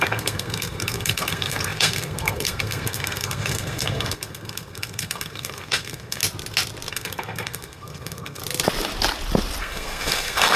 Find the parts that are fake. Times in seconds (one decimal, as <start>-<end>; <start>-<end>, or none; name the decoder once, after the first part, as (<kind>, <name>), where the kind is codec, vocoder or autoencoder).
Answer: 0.0-6.2 (codec, SNAC); 6.9-8.4; 9.6-10.6

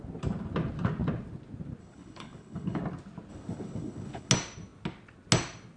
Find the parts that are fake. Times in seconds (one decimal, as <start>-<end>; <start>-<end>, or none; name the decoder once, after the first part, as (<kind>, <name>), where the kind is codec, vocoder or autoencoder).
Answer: 1.8-2.8 (codec, HILCodec); 3.3-4.3

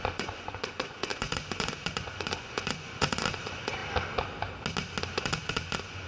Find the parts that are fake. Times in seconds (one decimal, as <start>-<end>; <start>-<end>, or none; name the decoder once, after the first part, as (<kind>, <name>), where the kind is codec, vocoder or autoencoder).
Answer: 0.0-3.8 (vocoder, Vocos); 5.0-6.1